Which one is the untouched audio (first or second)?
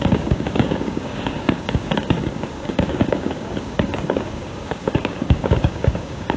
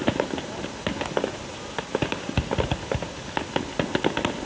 second